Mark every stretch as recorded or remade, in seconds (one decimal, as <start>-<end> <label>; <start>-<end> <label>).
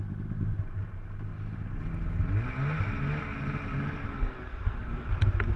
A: 0.0-4.1 recorded; 4.1-5.1 remade; 5.1-5.6 recorded